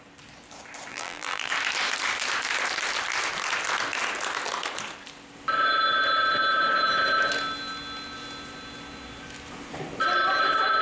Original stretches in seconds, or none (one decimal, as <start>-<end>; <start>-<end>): 0.0-0.9; 1.5-10.8